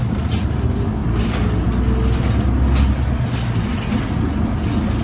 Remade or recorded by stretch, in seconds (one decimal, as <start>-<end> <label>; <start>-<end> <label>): 0.0-5.0 recorded

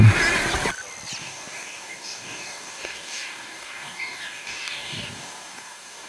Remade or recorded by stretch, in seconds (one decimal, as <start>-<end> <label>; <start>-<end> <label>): 0.0-1.2 recorded; 1.2-6.1 remade

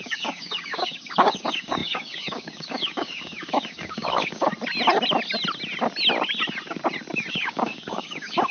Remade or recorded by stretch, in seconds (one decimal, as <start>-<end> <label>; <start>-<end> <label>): 0.0-4.5 remade; 4.5-7.3 recorded; 7.3-8.5 remade

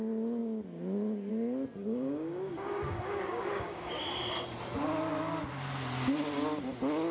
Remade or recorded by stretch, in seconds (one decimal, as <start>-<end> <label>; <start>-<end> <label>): 0.0-1.8 recorded; 1.8-3.9 remade; 3.9-7.1 recorded